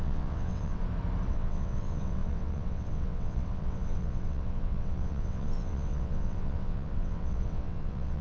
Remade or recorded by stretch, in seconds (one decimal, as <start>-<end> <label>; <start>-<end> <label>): 0.0-0.8 remade; 0.8-1.3 recorded; 1.3-8.2 remade